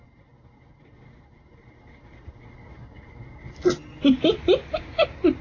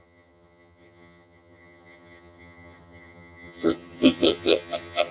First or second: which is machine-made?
second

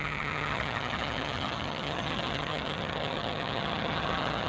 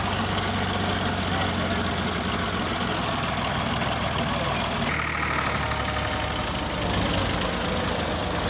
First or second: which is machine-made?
first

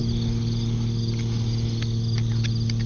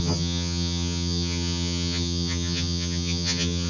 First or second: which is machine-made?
second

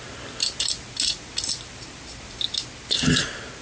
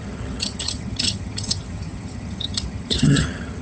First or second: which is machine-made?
second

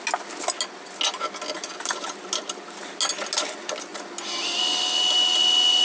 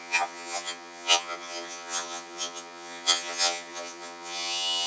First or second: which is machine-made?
second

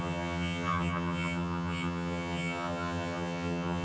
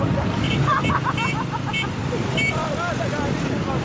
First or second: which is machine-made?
first